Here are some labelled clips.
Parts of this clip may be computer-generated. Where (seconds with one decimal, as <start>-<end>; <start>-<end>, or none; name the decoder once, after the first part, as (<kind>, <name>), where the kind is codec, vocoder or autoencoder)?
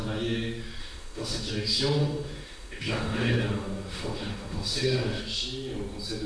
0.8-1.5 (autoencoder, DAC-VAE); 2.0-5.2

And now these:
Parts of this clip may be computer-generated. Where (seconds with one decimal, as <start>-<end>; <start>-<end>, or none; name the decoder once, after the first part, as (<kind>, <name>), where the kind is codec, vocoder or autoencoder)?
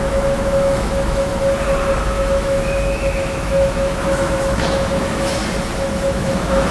0.0-1.3 (autoencoder, DAC-VAE); 2.0-5.4; 6.0-6.7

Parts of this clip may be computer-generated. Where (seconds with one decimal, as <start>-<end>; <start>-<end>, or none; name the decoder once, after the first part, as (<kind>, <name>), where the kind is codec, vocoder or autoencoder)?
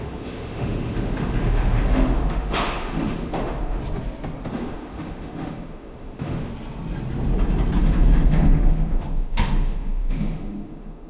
0.0-3.8 (autoencoder, DAC-VAE); 4.5-6.5; 7.8-11.1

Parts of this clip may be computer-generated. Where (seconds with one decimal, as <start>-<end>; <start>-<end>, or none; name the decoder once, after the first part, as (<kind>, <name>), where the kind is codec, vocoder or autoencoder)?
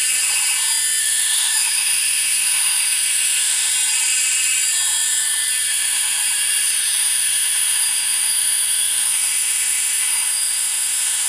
1.0-3.7 (autoencoder, DAC-VAE); 5.7-6.2; 7.0-11.3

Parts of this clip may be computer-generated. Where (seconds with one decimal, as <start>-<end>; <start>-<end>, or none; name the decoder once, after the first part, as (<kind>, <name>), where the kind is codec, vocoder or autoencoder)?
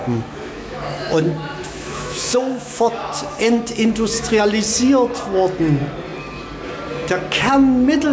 0.0-4.4 (autoencoder, DAC-VAE)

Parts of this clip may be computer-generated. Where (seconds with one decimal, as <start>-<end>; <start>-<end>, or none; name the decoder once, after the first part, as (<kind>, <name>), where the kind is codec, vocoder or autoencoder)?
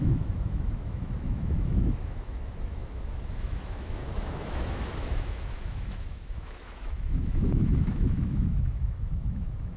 0.0-9.8 (autoencoder, DAC-VAE)